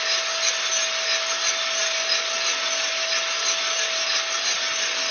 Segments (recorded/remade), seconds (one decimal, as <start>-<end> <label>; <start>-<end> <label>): 0.0-5.1 recorded